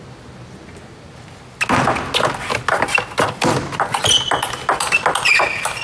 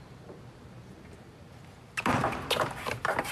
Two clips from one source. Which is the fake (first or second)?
second